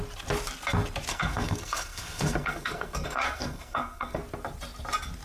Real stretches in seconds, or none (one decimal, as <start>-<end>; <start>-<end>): 0.0-1.1; 4.2-5.2

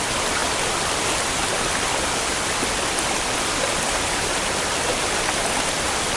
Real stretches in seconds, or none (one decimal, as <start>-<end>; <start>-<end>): 0.0-6.2

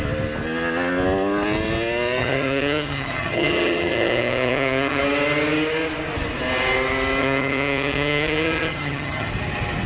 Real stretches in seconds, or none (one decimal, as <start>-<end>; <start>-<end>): 0.0-2.2; 5.0-7.2; 9.3-9.9

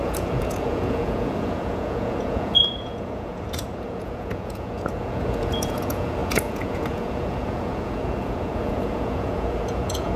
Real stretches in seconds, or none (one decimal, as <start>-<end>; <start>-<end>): none

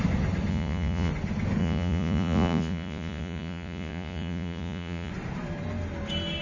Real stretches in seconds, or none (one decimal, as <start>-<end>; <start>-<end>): 0.0-0.5; 1.1-1.6; 5.1-6.4